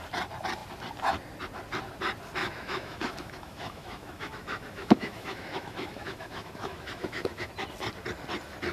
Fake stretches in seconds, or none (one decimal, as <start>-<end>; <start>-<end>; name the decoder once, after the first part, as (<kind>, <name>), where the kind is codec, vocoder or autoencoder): 2.4-7.5 (autoencoder, DAC-VAE)